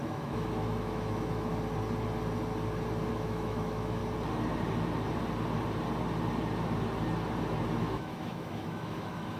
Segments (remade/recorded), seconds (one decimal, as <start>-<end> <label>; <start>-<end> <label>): 0.0-1.5 remade; 1.5-3.1 recorded; 3.1-4.0 remade; 4.0-7.8 recorded; 7.8-9.4 remade